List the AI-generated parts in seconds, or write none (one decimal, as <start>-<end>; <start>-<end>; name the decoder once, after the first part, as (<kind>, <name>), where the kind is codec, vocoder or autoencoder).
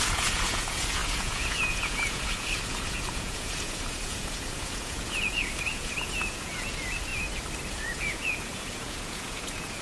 0.0-7.1 (vocoder, Vocos); 7.7-9.8